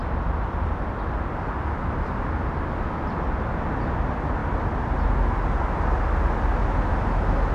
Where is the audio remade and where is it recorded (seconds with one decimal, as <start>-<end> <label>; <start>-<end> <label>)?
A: 0.0-7.5 recorded